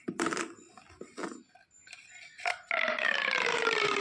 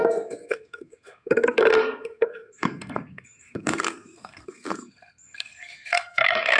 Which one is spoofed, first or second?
second